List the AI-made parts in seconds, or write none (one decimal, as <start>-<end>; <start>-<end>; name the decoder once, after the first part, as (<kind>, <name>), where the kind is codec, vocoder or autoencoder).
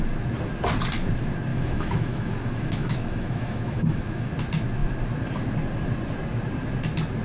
1.5-4.3 (autoencoder, DAC-VAE)